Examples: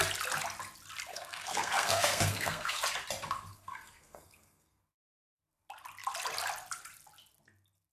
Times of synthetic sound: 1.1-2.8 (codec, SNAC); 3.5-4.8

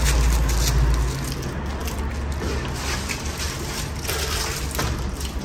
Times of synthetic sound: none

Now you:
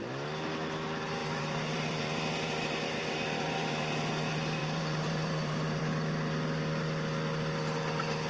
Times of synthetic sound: 1.2-4.1 (vocoder, BigVGAN v2); 4.6-5.8